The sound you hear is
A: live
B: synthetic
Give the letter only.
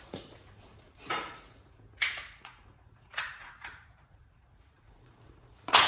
B